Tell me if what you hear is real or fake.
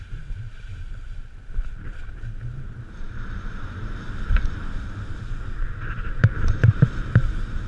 fake